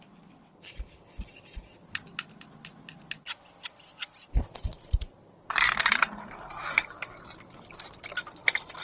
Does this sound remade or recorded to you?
recorded